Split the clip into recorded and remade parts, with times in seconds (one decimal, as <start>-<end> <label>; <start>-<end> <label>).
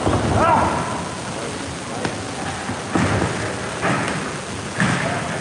0.0-5.4 recorded